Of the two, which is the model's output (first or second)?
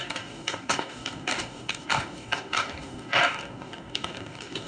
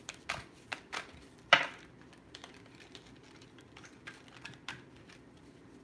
first